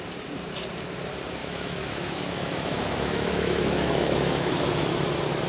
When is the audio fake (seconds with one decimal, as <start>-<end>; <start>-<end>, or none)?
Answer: 1.4-4.6